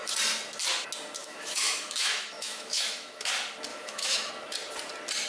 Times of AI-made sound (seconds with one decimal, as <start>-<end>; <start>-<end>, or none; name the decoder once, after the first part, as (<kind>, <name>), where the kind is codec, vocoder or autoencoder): 1.2-3.3 (autoencoder, DAC-VAE); 3.7-4.3